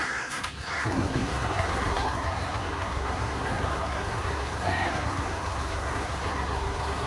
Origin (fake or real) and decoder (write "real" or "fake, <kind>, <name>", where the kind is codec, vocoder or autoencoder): fake, codec, SNAC